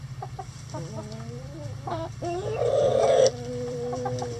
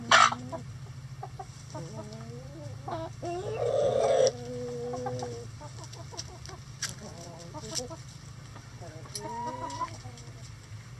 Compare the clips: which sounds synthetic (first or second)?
first